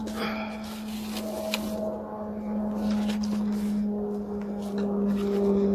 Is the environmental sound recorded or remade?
recorded